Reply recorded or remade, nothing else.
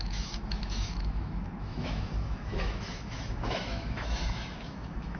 remade